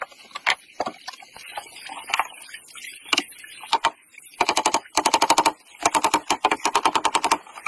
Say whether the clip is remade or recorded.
recorded